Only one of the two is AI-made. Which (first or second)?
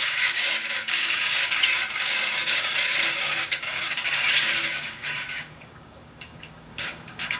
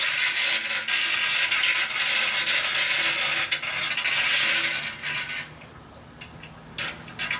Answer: first